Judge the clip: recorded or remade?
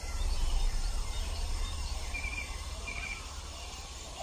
remade